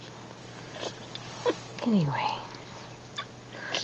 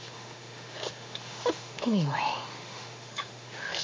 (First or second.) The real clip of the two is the first